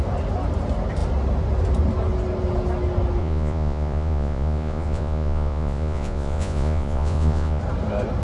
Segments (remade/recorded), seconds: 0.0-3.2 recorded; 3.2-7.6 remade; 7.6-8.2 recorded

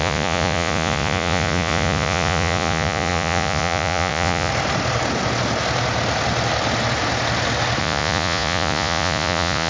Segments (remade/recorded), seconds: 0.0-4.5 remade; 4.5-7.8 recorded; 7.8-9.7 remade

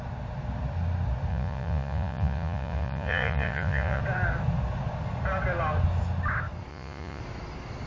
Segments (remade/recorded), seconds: 0.0-1.3 recorded; 1.3-4.0 remade; 4.0-6.7 recorded; 6.7-7.2 remade; 7.2-7.9 recorded

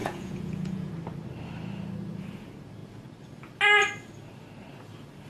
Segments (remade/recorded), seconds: 0.0-0.9 remade; 0.9-5.3 recorded

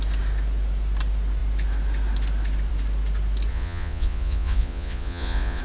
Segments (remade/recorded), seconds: 0.0-3.5 recorded; 3.5-5.6 remade

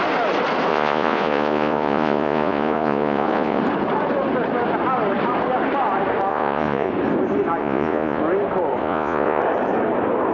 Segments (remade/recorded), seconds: 0.0-0.7 recorded; 0.7-3.6 remade; 3.6-6.3 recorded; 6.3-6.9 remade; 6.9-7.6 recorded; 7.6-8.2 remade; 8.2-8.8 recorded; 8.8-9.4 remade; 9.4-10.3 recorded

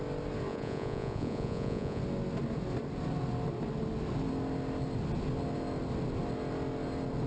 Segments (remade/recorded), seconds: 0.0-0.5 recorded; 0.5-2.0 remade; 2.0-7.3 recorded